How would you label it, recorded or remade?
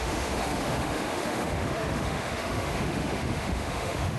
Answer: remade